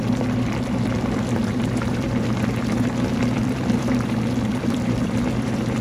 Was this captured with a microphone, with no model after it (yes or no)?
no